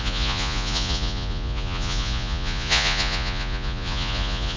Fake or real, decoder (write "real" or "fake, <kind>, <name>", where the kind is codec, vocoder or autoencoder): fake, vocoder, Vocos